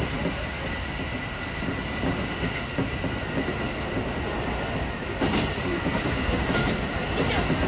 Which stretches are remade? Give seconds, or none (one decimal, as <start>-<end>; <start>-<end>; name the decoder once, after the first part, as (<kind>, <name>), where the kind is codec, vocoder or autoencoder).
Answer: 5.7-6.4 (codec, DAC)